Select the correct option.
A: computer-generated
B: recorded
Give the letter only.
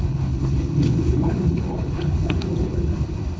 A